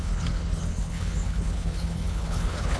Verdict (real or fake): fake